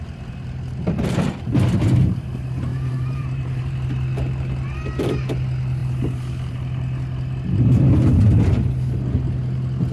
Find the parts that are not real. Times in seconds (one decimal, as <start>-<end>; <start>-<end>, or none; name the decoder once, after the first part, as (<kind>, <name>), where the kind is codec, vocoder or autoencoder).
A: 2.7-3.7 (vocoder, BigVGAN v2)